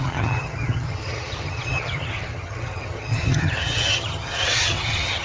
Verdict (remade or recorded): remade